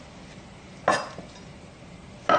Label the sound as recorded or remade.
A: recorded